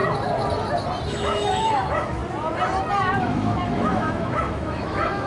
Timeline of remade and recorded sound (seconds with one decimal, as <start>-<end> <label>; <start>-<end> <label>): 0.0-1.1 recorded; 1.1-2.2 remade; 2.2-3.2 recorded; 3.2-5.3 remade

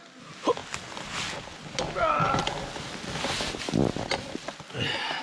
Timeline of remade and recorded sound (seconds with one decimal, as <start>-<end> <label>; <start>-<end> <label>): 0.0-5.2 recorded